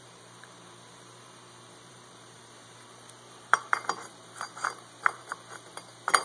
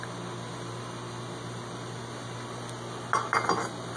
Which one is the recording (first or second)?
second